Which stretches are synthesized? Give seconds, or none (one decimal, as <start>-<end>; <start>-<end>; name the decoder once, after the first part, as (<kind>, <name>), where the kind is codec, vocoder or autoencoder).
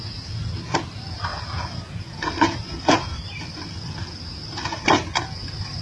none